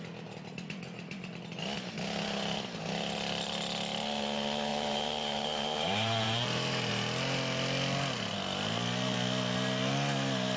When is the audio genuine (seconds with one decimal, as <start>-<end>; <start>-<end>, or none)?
0.0-4.7; 6.9-10.6